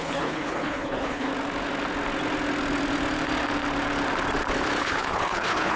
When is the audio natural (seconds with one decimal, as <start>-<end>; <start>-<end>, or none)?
1.3-4.8